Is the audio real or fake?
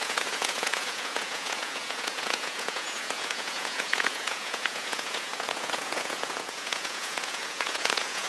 fake